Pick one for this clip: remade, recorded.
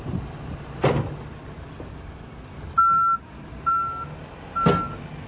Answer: recorded